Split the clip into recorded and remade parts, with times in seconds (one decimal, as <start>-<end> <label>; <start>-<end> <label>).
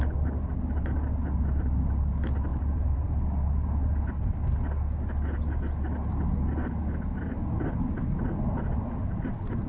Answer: 0.0-2.5 recorded; 2.5-3.1 remade; 3.1-9.7 recorded